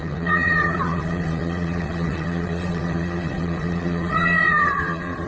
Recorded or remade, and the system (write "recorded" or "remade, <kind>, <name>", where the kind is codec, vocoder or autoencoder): remade, vocoder, WaveNeXt